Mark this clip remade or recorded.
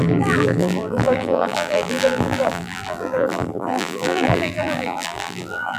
remade